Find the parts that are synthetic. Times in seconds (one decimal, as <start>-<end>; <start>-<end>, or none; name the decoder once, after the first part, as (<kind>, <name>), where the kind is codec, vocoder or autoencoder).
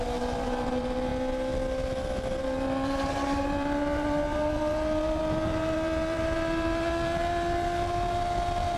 0.0-1.1 (vocoder, BigVGAN v2); 2.4-8.8